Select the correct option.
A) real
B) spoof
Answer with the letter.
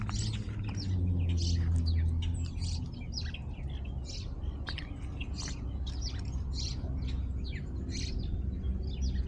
A